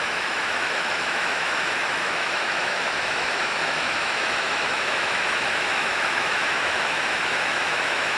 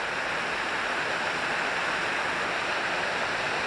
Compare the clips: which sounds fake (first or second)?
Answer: first